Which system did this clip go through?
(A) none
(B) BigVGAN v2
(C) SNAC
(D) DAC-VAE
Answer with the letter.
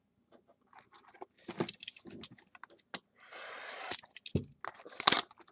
A